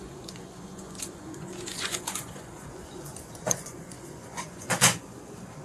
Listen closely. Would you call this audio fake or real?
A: fake